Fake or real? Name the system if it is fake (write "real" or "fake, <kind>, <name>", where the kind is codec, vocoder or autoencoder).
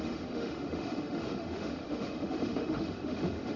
fake, autoencoder, DAC-VAE